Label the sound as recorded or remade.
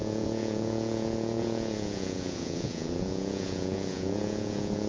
remade